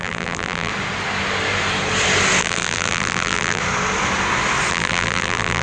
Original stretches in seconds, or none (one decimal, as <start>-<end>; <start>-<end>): 0.7-2.4; 3.6-4.7